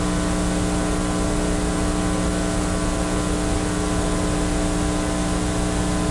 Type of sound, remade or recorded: recorded